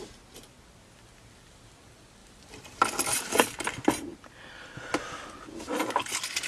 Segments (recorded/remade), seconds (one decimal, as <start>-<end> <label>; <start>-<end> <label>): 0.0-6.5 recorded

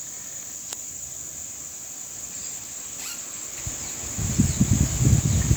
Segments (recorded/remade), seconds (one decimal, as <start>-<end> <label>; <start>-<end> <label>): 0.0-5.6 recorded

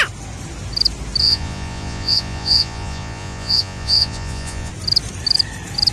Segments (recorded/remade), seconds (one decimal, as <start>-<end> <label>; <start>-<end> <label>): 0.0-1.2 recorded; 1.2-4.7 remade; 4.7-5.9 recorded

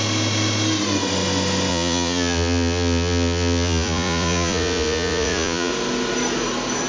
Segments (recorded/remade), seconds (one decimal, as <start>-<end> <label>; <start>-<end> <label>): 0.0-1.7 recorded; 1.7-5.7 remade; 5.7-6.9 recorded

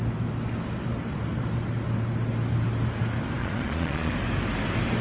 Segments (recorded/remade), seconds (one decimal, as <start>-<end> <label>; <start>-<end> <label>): 0.0-3.4 recorded; 3.4-4.1 remade; 4.1-5.0 recorded

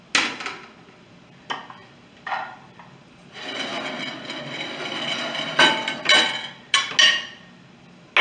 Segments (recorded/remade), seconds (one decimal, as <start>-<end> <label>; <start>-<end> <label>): 0.0-8.2 recorded

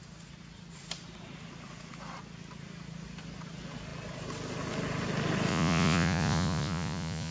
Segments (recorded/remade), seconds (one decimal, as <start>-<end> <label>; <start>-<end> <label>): 0.0-5.5 recorded; 5.5-7.3 remade